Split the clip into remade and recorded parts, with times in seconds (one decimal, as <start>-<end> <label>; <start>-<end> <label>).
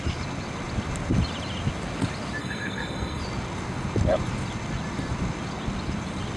0.0-2.4 recorded; 2.4-3.2 remade; 3.2-6.4 recorded